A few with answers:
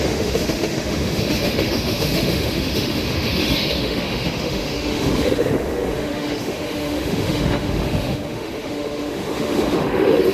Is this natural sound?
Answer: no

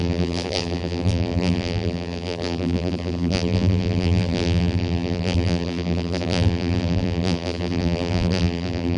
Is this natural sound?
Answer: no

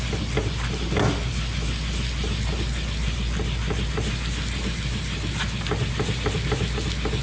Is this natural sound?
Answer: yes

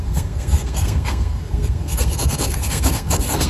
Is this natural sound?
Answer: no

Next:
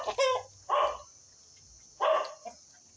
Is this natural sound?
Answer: yes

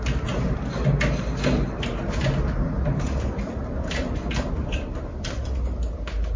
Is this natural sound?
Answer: yes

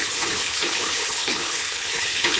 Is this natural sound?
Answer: no